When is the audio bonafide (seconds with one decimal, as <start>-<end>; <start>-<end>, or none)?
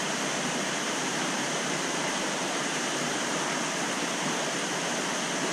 3.3-5.5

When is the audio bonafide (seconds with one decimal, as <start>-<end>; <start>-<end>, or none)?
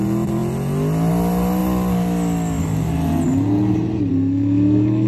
0.0-4.1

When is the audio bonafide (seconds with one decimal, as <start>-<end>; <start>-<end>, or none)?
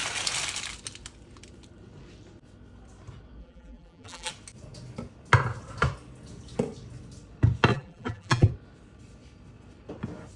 0.0-3.4; 4.3-7.7; 8.5-10.4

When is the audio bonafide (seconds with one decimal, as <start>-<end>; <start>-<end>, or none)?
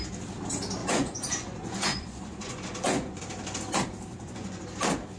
0.0-0.8; 3.2-4.1; 4.6-5.2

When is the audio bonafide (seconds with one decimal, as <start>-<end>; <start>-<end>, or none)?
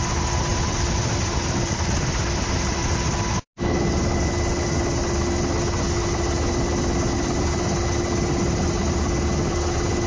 0.0-0.5; 2.9-10.1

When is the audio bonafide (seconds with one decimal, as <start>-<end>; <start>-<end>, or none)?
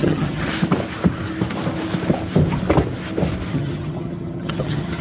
0.5-3.5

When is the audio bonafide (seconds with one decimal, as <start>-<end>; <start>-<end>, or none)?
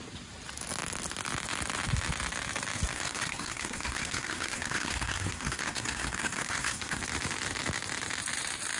0.0-2.9; 7.0-8.8